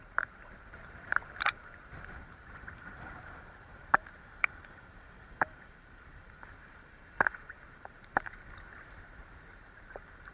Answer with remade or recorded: remade